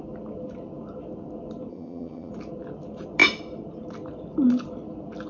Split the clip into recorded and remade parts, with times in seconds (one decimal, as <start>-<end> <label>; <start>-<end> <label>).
0.0-1.7 recorded; 1.7-2.3 remade; 2.3-5.3 recorded